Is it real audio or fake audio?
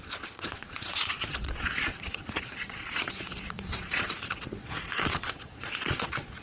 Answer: fake